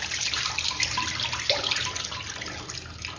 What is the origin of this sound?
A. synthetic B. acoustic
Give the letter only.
B